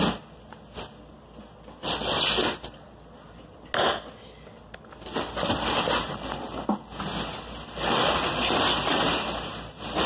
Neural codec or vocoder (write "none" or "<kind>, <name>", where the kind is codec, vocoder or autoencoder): none